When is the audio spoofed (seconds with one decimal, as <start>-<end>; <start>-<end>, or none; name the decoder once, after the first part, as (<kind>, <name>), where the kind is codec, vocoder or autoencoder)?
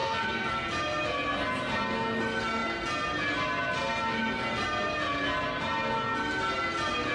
0.0-0.5 (codec, SNAC)